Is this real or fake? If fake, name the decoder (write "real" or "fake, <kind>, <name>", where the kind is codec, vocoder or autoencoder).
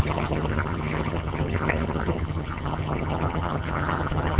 fake, vocoder, HiFi-GAN